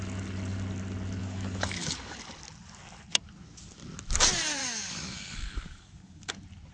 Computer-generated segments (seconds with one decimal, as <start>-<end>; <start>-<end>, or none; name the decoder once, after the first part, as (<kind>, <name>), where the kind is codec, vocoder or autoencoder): 1.2-2.2 (codec, DAC); 4.6-6.3